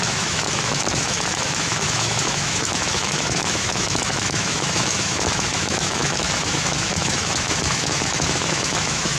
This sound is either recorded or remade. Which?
remade